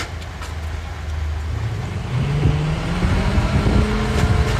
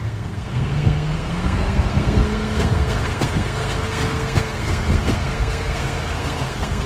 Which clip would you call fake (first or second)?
second